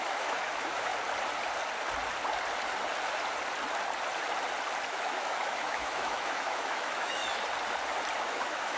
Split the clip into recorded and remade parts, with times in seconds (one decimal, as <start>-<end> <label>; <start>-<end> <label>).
0.0-0.9 remade; 0.9-4.9 recorded; 4.9-7.2 remade; 7.2-8.2 recorded; 8.2-8.8 remade